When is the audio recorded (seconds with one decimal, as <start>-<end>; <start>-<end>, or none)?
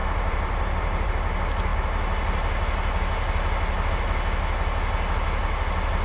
1.1-6.0